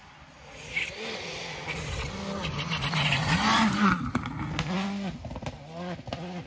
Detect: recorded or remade recorded